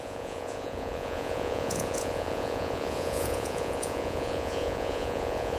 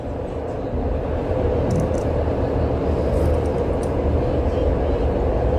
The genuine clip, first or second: second